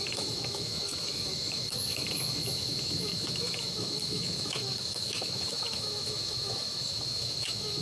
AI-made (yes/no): yes